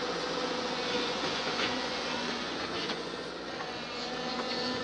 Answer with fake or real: fake